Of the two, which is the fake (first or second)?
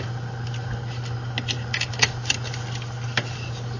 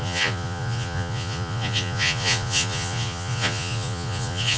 second